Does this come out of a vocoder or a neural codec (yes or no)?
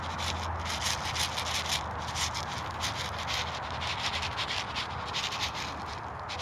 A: no